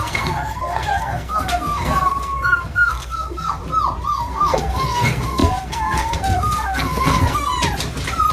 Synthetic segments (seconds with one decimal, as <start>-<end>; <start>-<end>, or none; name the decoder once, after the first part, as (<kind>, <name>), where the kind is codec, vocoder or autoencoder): 0.0-3.6 (codec, SNAC); 4.1-7.5